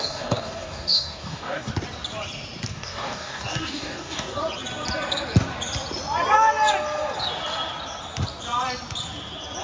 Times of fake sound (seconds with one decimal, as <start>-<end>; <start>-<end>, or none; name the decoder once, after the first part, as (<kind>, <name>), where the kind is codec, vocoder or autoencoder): 0.0-1.7 (codec, DAC); 2.7-4.4